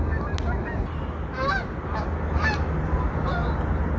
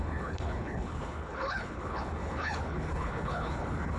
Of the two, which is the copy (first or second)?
second